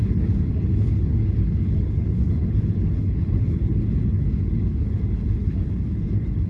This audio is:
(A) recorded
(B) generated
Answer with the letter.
B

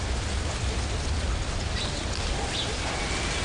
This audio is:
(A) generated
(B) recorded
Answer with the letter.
B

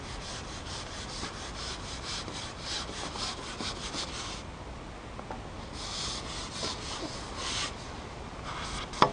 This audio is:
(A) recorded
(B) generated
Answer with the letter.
A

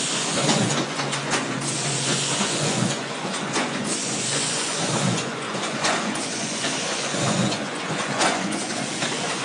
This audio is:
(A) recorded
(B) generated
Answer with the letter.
B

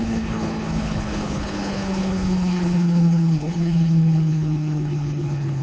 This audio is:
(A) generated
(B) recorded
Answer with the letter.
A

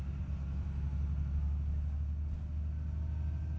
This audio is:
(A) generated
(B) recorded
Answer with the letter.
B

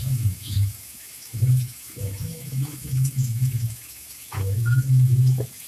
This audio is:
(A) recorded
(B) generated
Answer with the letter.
B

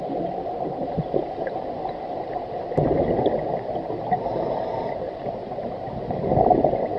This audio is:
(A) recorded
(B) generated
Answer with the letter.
A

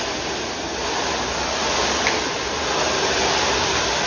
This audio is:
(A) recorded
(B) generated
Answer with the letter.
A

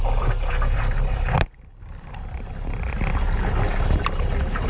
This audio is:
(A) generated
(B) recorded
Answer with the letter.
A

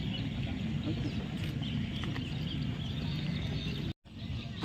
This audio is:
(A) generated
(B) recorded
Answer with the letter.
B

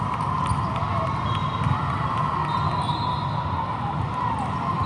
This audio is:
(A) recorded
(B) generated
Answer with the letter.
A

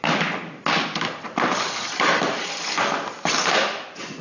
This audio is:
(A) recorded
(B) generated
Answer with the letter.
A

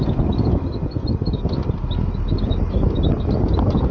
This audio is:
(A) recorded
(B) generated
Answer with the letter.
A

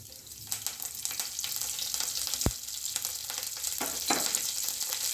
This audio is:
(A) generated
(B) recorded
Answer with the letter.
B